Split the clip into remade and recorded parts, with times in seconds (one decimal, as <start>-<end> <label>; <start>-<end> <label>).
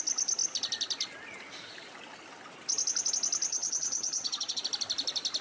0.0-3.5 recorded; 3.5-4.6 remade; 4.6-5.4 recorded